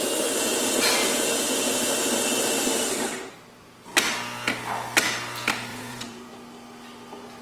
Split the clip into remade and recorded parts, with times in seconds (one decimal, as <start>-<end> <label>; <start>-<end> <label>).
0.0-1.0 recorded; 1.0-1.7 remade; 1.7-5.7 recorded; 5.7-6.3 remade; 6.3-7.4 recorded